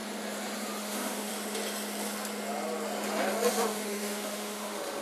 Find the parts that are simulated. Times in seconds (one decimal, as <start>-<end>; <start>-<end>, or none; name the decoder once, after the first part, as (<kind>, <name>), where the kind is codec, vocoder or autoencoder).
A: 0.8-1.3 (autoencoder, DAC-VAE); 3.5-5.0